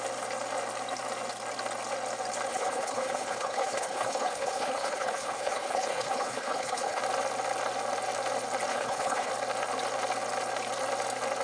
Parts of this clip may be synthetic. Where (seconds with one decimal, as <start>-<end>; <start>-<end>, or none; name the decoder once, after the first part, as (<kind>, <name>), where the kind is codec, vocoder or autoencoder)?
2.5-7.0 (codec, HILCodec); 8.7-9.3